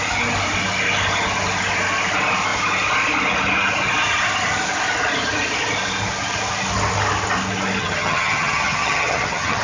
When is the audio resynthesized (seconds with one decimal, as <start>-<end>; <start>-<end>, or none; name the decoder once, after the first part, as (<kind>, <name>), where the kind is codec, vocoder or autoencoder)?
7.8-9.6 (vocoder, HiFi-GAN)